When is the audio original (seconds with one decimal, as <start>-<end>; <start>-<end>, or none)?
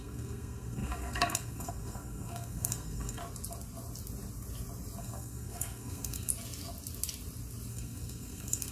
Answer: 3.2-5.0; 6.3-7.7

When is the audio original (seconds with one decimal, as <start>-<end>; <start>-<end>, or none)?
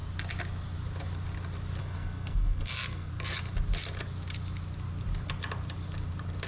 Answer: 0.0-1.8; 3.1-6.5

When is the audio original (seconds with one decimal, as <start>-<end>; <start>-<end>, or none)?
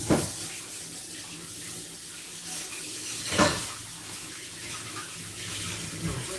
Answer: 0.0-2.3; 3.2-3.9; 5.7-6.4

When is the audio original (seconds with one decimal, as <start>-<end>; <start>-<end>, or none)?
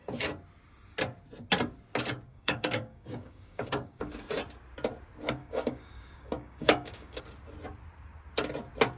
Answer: 0.0-2.3; 4.1-5.4; 7.2-9.0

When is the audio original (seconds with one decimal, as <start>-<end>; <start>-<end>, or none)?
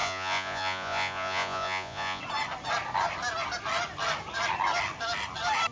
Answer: 2.2-5.7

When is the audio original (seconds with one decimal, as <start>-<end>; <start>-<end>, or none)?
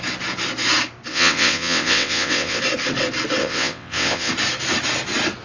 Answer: 0.0-1.1; 2.6-3.4; 4.3-5.4